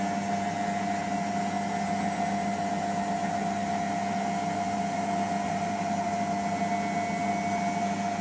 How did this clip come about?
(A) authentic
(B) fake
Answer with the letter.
A